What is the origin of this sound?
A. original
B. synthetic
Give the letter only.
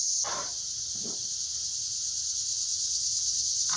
A